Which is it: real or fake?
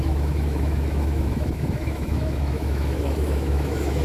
fake